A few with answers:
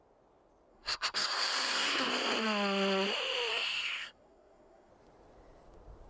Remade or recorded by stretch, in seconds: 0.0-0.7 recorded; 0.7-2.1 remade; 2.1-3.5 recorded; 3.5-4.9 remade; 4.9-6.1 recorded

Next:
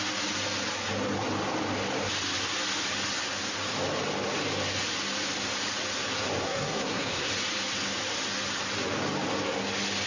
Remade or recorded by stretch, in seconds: 0.0-6.4 recorded; 6.4-7.3 remade; 7.3-10.1 recorded

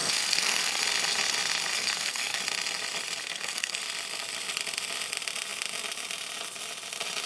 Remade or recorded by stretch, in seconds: 0.0-0.8 remade; 0.8-1.7 recorded; 1.7-2.4 remade; 2.4-3.2 recorded; 3.2-3.8 remade; 3.8-7.3 recorded

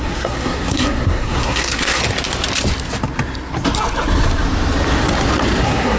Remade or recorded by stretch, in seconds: 0.0-2.0 remade; 2.0-5.6 recorded; 5.6-6.0 remade

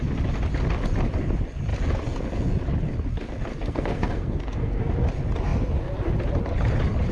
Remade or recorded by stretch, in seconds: 0.0-3.5 recorded; 3.5-4.8 remade; 4.8-7.1 recorded